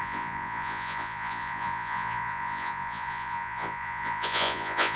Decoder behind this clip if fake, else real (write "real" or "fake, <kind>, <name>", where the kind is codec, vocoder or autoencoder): fake, vocoder, Vocos